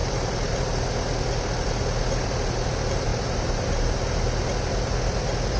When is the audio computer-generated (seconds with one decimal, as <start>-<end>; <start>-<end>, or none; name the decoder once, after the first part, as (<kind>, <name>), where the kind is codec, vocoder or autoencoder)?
0.0-0.8 (vocoder, BigVGAN v2); 3.1-4.0